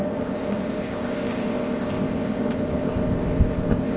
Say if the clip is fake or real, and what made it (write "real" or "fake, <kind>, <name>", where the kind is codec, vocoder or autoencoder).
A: fake, codec, ZipCodec